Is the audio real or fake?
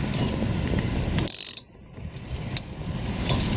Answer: real